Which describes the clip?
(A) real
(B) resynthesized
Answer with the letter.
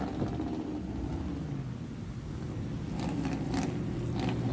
A